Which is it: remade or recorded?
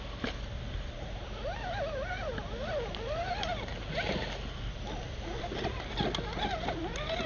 recorded